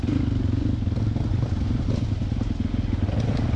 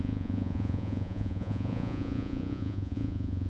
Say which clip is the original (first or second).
first